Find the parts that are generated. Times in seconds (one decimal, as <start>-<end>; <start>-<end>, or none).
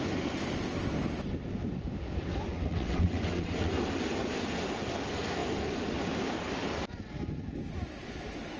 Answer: 2.5-3.7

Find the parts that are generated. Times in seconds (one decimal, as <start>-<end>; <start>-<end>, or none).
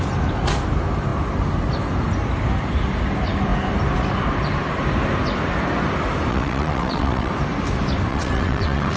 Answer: 6.3-7.3; 8.1-9.0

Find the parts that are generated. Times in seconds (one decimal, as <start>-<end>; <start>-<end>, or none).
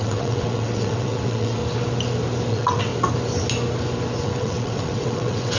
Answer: 0.0-1.6; 2.5-2.9; 4.2-5.6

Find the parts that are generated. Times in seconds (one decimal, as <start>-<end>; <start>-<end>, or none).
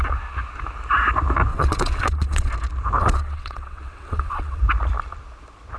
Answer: 1.5-2.5; 3.0-4.6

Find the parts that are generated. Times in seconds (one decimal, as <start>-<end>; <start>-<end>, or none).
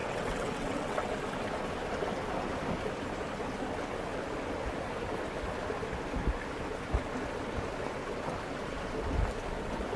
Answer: 0.0-1.1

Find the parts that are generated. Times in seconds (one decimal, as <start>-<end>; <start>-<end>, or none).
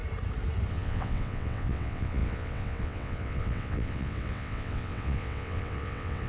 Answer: 0.7-6.3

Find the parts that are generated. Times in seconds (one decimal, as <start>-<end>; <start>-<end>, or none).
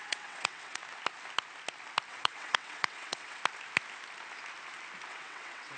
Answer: 0.0-0.8; 2.1-3.4; 5.1-5.8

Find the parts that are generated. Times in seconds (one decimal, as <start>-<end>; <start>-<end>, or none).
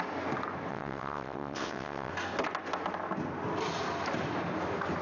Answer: 0.7-2.1